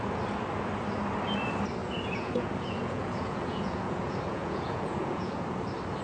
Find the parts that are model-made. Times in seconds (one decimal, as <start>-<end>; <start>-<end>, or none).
1.8-5.4